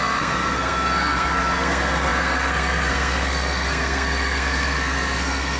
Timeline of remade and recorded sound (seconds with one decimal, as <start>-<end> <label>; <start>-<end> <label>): 0.0-5.6 remade

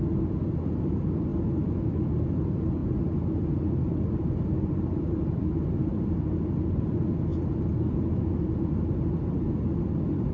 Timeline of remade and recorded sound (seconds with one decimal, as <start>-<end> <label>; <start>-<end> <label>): 0.0-1.3 remade; 1.3-2.2 recorded; 2.2-7.3 remade; 7.3-8.1 recorded; 8.1-10.3 remade

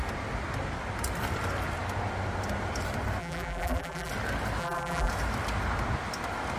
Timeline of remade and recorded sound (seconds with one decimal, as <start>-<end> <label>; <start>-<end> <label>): 0.0-3.2 recorded; 3.2-4.1 remade; 4.1-4.6 recorded; 4.6-5.1 remade; 5.1-6.6 recorded

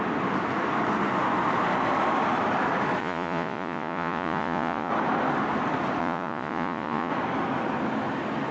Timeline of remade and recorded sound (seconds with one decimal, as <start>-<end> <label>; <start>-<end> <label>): 0.0-3.0 recorded; 3.0-4.9 remade; 4.9-6.0 recorded; 6.0-7.1 remade; 7.1-8.5 recorded

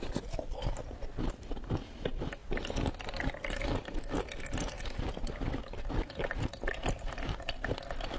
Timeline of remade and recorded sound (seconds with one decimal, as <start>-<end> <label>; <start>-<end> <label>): 0.0-8.2 recorded

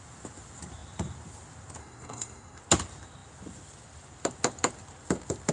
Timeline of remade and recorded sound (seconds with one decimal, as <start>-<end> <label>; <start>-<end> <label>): 0.0-1.8 recorded; 1.8-2.6 remade; 2.6-5.5 recorded

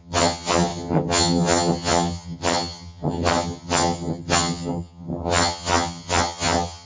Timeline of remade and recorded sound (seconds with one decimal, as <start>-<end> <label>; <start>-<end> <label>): 0.0-6.9 remade